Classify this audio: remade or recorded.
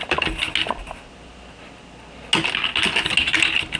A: recorded